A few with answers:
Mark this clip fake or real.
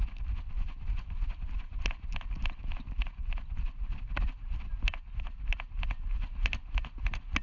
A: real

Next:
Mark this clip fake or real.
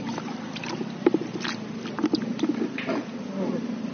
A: real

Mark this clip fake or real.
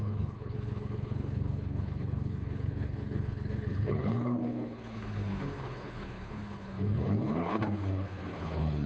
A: fake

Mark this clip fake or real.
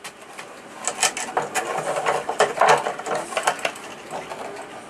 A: real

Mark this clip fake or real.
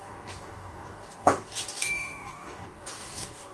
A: fake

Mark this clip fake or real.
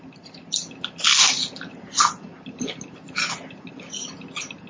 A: real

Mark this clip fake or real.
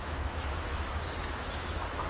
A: fake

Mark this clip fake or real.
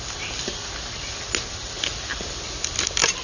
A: real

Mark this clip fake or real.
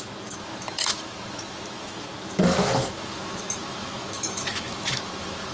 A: fake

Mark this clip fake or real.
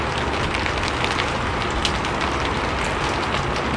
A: real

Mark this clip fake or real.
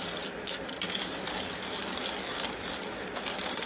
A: real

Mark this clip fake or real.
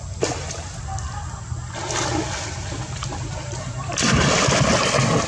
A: real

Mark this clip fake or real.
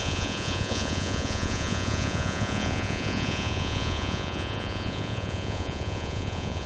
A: fake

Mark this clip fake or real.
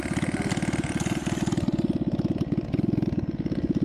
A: real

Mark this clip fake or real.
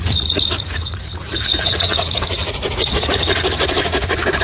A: fake